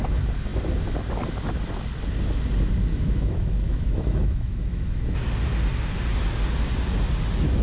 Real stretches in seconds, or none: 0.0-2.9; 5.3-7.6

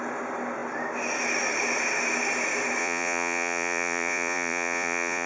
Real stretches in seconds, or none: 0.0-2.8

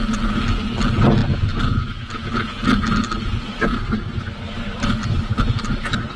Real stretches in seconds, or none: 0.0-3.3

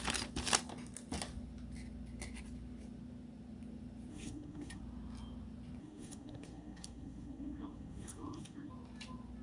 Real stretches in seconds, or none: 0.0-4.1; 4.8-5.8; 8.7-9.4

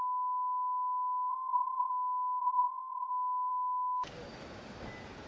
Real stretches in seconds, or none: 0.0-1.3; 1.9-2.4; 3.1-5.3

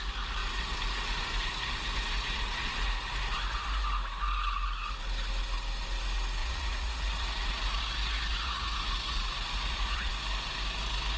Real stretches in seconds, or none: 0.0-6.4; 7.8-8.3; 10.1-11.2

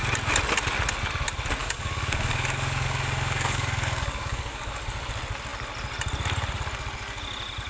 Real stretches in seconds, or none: 0.0-1.6; 4.8-7.7